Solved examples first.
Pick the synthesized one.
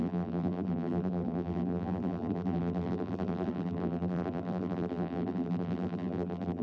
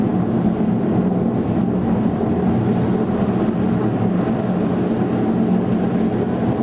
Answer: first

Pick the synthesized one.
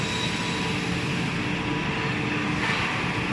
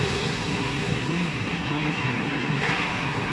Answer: second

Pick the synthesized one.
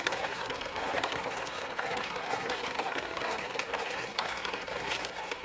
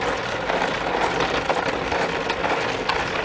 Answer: first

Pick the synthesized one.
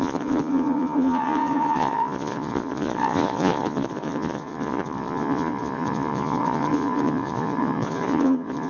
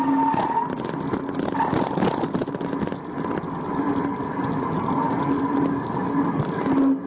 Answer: first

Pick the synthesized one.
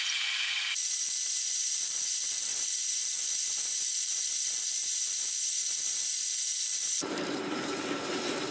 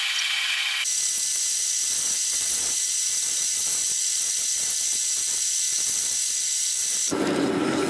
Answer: first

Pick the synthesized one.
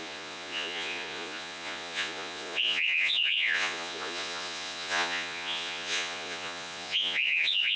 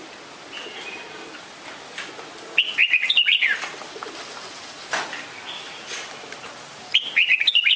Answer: first